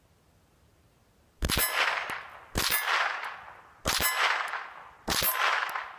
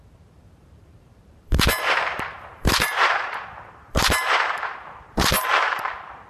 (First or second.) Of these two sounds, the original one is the first